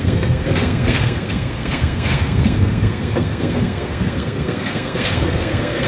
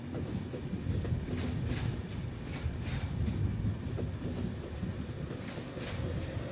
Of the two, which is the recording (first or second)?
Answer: second